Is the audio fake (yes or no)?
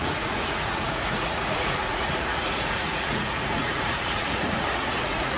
yes